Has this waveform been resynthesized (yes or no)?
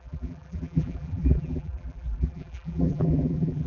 yes